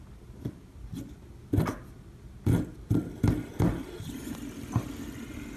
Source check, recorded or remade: recorded